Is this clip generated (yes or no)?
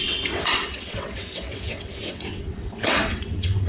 yes